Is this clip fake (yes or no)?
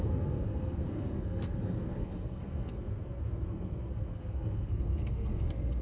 yes